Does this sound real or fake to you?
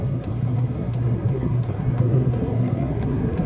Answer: fake